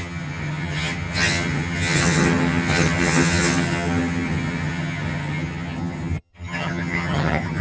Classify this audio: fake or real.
fake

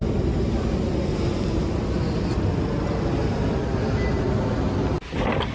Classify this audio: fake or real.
real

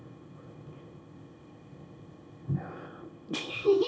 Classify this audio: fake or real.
fake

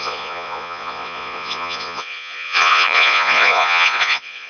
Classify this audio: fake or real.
fake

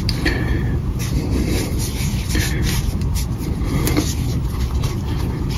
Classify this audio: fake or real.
real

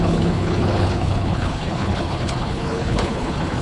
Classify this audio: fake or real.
fake